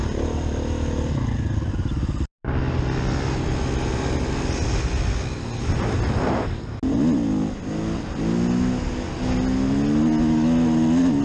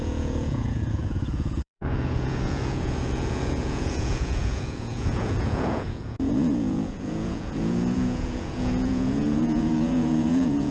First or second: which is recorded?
first